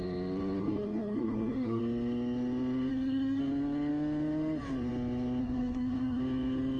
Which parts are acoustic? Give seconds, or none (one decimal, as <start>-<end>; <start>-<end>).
0.0-0.6; 1.8-2.9; 3.4-5.4; 6.2-6.8